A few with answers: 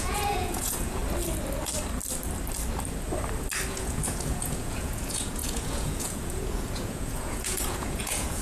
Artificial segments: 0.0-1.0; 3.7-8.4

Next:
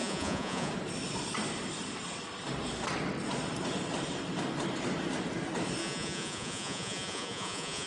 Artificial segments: 0.0-0.7; 5.8-7.9

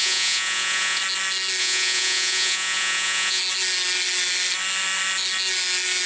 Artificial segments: 0.0-1.0; 1.6-3.4

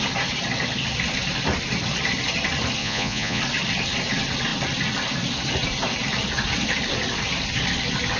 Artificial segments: 2.8-3.4

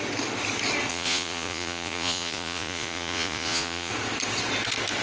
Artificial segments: 0.9-3.9

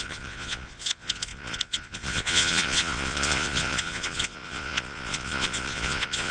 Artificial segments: 0.0-6.3

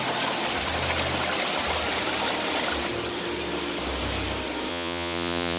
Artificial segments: 4.7-5.6

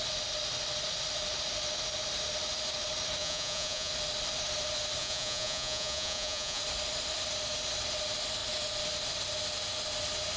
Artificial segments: 3.2-3.9; 5.0-6.6